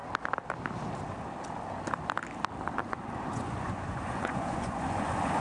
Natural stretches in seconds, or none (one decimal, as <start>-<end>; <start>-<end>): 0.0-3.2